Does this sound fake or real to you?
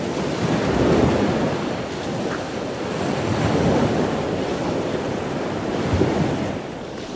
real